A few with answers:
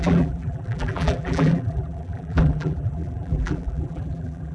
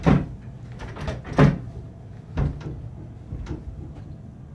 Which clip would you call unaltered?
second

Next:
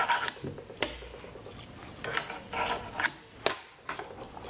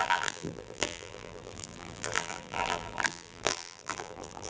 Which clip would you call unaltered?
first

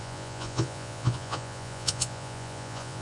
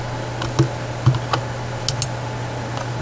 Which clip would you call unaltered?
second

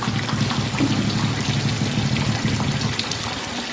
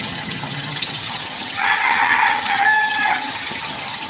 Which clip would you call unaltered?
first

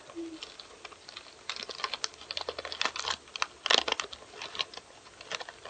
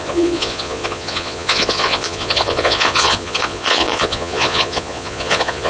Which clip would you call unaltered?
first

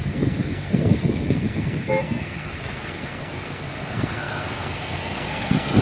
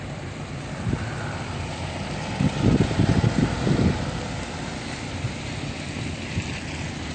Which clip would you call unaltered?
second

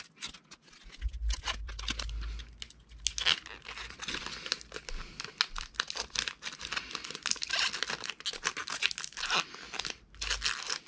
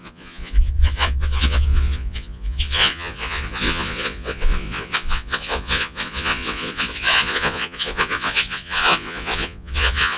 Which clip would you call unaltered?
first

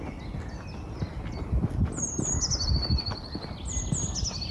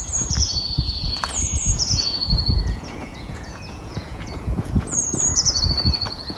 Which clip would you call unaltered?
first